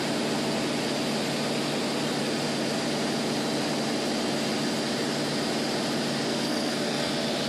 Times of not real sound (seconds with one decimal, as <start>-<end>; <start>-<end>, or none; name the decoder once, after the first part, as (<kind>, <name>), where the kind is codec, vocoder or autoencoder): 6.3-7.1 (codec, SNAC)